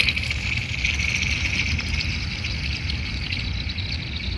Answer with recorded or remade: recorded